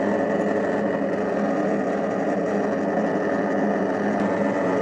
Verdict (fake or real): real